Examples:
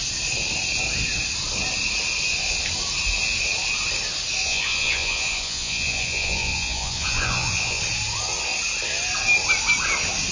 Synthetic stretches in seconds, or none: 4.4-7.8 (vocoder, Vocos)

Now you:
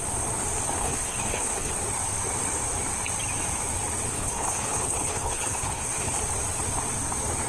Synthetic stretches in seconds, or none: 0.8-1.7 (codec, HILCodec); 4.1-6.2

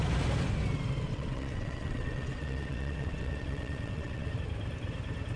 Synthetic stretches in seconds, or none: 1.1-4.3 (vocoder, WaveNeXt)

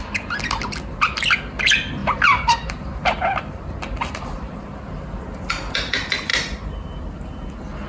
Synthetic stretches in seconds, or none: 2.0-5.2 (vocoder, BigVGAN v2)

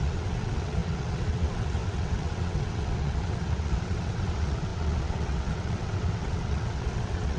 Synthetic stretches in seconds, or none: 0.0-7.4 (vocoder, WaveNeXt)

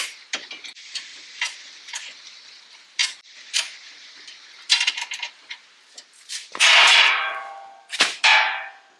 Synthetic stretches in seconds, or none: 0.0-1.1 (vocoder, BigVGAN v2); 2.6-3.0; 3.5-8.3

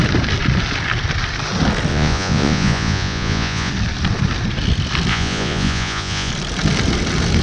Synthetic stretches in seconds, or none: 1.9-3.7 (vocoder, Vocos); 5.1-6.3

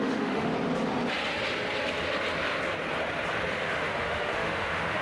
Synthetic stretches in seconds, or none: 0.0-0.5 (autoencoder, DAC-VAE); 3.5-5.0